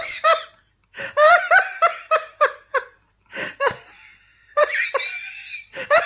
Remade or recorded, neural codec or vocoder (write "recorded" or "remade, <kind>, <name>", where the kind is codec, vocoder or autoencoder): remade, vocoder, BigVGAN v2